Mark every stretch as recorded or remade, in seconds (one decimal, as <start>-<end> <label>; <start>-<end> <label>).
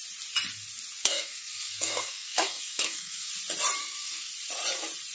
0.0-1.0 recorded; 1.0-3.3 remade; 3.3-3.8 recorded; 3.8-4.3 remade; 4.3-5.1 recorded